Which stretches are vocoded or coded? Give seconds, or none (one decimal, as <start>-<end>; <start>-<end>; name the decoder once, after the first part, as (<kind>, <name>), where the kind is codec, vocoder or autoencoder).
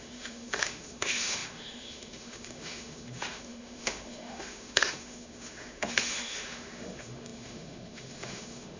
0.0-8.8 (autoencoder, DAC-VAE)